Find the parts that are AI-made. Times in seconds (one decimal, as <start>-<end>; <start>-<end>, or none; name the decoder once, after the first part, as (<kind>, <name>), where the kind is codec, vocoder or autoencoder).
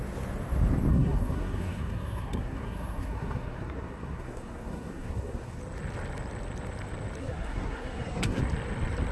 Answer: 0.9-5.6 (codec, SNAC); 7.2-8.4